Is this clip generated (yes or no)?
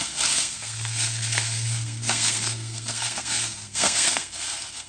yes